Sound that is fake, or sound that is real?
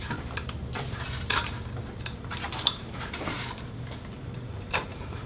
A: fake